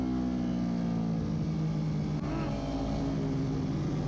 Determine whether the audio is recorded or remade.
recorded